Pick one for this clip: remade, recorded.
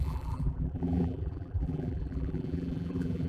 remade